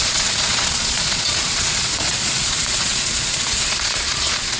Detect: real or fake fake